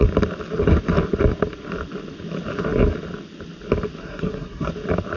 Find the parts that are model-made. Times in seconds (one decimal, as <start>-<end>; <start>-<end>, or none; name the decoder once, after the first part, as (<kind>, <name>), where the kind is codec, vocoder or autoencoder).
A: 4.0-4.7 (codec, SNAC)

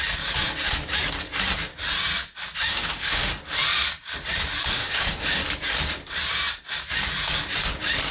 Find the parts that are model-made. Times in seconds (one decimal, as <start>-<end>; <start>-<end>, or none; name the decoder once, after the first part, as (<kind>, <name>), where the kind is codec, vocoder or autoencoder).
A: 2.7-3.2 (autoencoder, DAC-VAE); 4.8-5.4

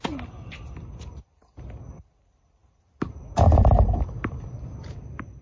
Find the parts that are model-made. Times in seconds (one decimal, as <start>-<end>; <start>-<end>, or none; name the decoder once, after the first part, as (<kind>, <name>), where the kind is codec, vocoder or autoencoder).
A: none

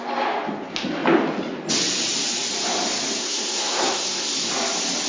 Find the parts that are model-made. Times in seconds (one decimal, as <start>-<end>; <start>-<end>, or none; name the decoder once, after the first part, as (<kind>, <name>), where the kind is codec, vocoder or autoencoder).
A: 3.2-4.5 (codec, SNAC)

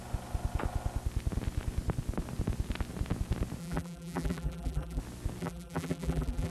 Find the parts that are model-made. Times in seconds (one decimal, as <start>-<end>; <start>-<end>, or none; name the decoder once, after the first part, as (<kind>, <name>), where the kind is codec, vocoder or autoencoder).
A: 3.6-5.0 (vocoder, BigVGAN v2); 5.4-6.5